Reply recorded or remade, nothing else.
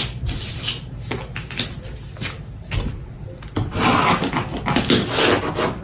recorded